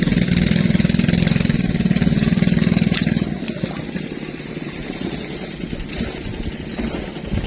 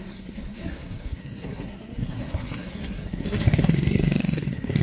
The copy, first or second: second